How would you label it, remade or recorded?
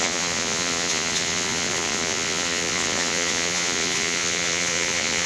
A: remade